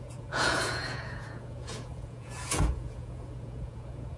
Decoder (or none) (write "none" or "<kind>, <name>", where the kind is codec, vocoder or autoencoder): vocoder, Vocos